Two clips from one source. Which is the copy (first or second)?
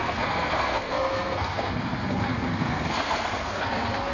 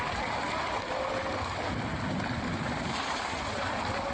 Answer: first